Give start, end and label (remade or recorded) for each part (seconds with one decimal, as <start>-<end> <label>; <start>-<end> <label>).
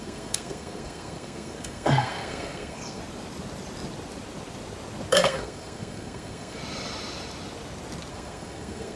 0.0-3.0 remade; 3.0-5.1 recorded; 5.1-6.6 remade; 6.6-8.1 recorded; 8.1-9.0 remade